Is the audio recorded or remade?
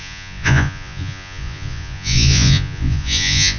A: remade